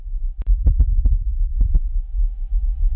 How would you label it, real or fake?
real